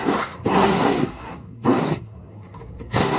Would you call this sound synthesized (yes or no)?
yes